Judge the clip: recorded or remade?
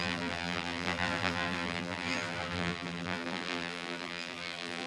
remade